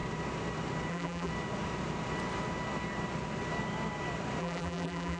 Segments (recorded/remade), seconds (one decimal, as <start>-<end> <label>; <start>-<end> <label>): 0.0-0.9 recorded; 0.9-1.3 remade; 1.3-4.4 recorded; 4.4-5.2 remade